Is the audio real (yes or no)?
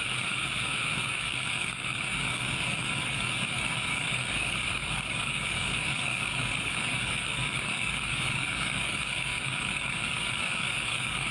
no